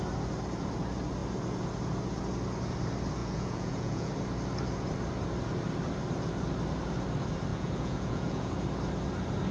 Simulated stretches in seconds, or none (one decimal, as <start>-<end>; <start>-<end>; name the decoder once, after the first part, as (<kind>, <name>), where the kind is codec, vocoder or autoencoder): 3.2-4.1 (vocoder, Vocos); 7.5-8.5